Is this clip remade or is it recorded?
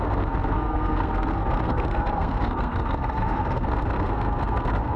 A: remade